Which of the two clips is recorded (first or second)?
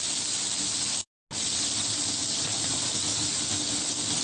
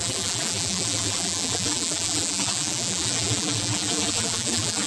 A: first